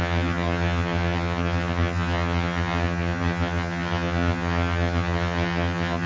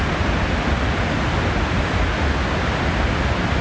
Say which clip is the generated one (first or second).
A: first